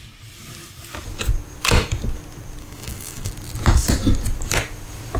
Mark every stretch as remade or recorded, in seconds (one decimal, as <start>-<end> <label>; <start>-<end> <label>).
0.0-2.6 recorded; 2.6-3.3 remade; 3.3-5.2 recorded